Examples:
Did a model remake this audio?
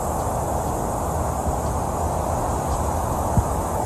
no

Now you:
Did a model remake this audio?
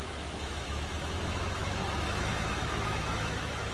yes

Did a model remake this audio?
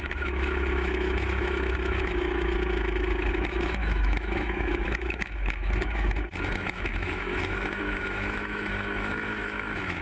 yes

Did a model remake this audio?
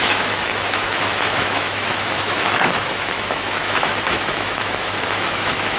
yes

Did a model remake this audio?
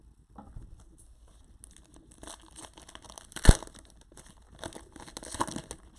no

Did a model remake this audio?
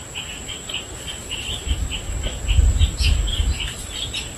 no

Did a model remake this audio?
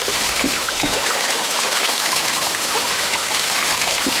yes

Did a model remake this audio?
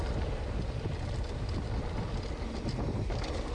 no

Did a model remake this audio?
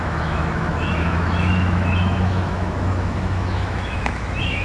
yes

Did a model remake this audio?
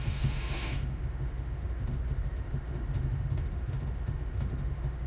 yes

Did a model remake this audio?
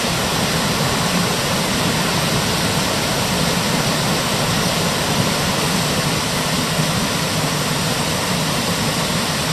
no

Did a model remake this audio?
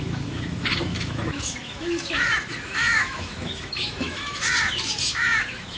yes